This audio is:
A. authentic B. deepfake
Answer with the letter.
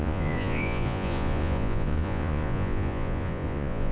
B